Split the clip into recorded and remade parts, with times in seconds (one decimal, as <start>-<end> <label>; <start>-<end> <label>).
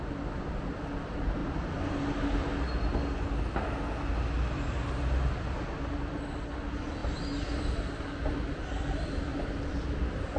0.0-10.4 recorded